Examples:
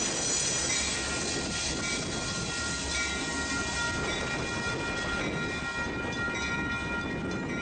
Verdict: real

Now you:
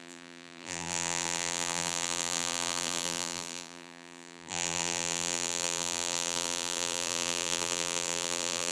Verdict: fake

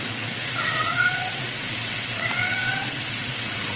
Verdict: fake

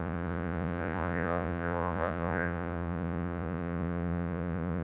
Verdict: fake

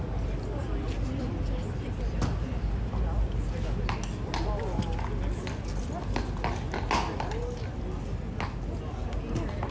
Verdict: real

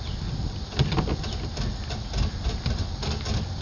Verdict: real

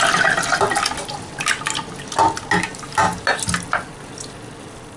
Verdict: real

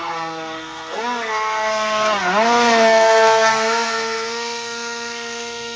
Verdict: fake